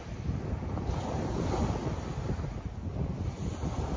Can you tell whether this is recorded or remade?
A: recorded